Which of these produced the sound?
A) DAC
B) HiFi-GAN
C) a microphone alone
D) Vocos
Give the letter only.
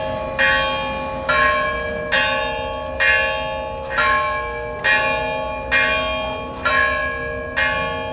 C